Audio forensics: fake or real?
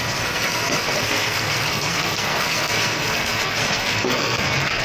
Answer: fake